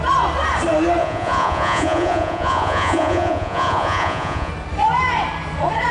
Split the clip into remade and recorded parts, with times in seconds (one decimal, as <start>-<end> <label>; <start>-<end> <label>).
0.0-1.0 recorded; 1.0-4.5 remade; 4.5-5.9 recorded